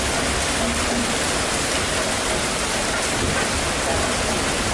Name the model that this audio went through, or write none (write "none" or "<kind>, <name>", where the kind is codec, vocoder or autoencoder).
vocoder, BigVGAN v2